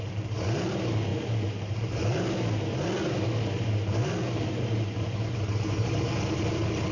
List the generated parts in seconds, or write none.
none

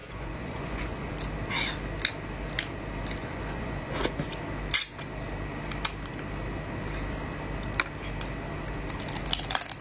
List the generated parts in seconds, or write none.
0.0-1.1; 3.2-4.3

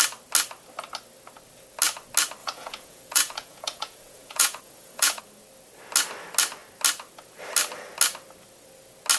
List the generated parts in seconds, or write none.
2.4-5.2

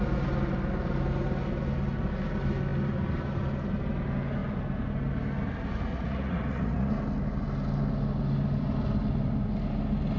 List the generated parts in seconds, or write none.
5.9-6.9

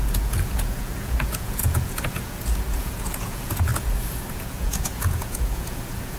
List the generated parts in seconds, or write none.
0.0-6.2

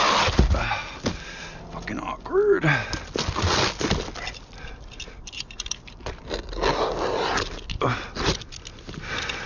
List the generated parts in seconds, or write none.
none